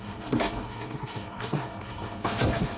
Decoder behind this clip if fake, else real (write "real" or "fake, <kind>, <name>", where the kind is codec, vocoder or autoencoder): fake, codec, SNAC